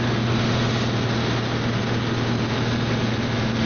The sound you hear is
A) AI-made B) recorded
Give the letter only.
B